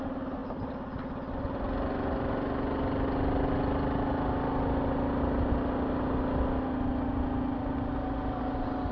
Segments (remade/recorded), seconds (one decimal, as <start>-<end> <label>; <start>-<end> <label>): 0.0-8.9 recorded